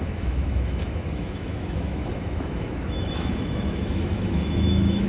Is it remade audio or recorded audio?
remade